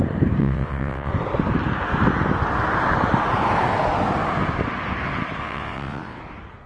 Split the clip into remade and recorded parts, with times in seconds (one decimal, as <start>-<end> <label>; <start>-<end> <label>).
0.0-0.4 recorded; 0.4-1.1 remade; 1.1-5.4 recorded; 5.4-6.2 remade; 6.2-6.7 recorded